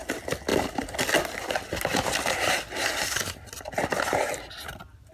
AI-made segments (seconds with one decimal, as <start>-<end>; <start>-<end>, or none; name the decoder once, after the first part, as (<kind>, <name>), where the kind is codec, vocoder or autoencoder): none